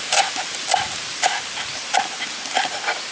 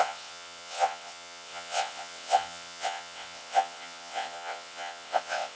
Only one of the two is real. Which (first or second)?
first